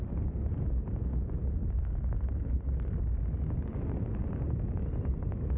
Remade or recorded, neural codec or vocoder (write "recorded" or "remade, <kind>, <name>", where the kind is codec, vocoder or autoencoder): recorded